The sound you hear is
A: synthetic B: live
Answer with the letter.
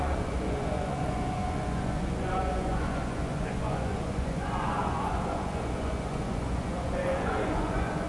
A